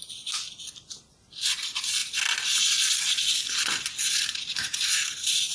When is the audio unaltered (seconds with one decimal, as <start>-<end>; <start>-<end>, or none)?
0.0-5.5